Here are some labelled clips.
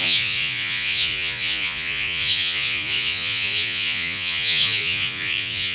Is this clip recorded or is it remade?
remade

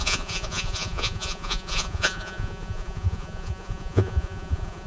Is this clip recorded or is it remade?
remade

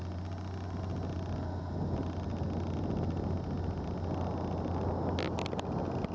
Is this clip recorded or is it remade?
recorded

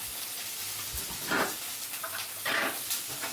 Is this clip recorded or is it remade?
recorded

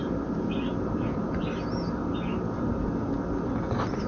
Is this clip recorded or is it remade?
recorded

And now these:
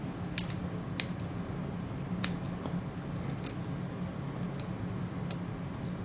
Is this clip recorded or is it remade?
recorded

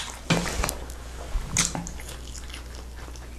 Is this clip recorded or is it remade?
recorded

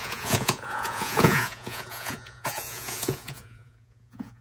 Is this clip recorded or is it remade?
remade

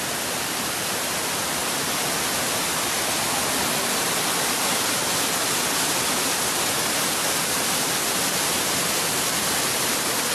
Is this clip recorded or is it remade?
recorded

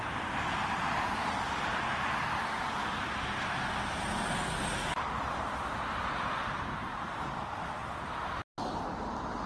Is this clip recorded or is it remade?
recorded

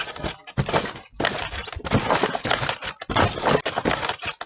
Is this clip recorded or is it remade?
recorded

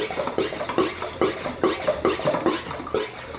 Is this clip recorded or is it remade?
recorded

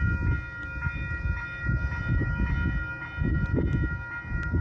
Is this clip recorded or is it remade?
recorded